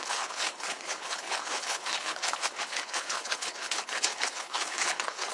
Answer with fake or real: fake